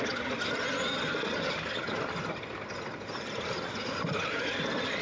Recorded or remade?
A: recorded